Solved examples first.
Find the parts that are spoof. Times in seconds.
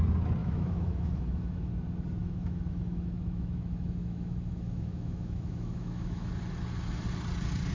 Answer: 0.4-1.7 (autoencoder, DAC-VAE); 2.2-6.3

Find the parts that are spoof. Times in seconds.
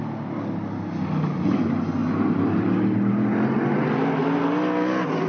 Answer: none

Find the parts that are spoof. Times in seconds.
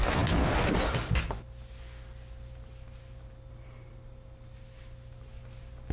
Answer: none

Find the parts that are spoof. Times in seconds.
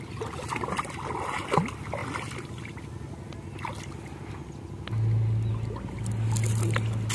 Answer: none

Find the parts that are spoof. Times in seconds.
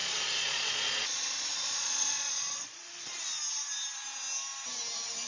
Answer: 0.0-3.2 (vocoder, Vocos)